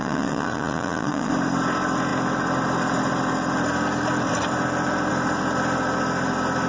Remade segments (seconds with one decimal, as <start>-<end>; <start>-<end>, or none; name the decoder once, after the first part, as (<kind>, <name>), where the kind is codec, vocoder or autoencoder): 0.0-1.3 (vocoder, Vocos)